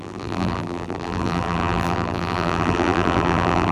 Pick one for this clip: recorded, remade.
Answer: remade